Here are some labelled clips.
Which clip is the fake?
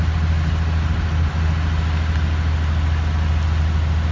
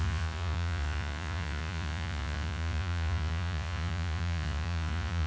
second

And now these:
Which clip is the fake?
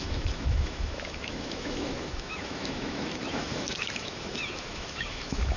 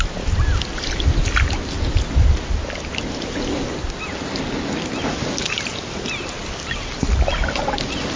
first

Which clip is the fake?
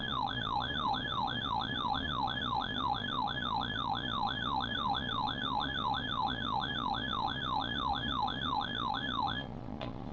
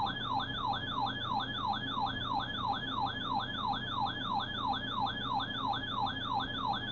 first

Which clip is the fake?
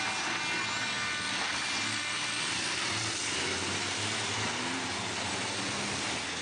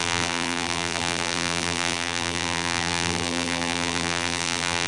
second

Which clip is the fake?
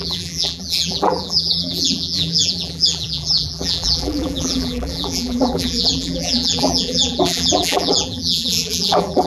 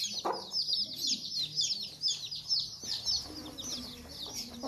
first